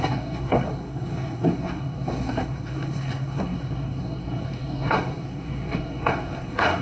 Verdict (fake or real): fake